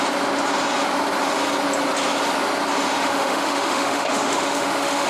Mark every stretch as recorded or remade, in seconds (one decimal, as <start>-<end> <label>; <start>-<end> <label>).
0.0-3.0 recorded; 3.0-5.1 remade